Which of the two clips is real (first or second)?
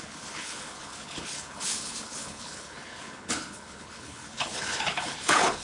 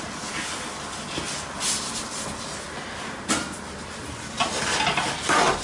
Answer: second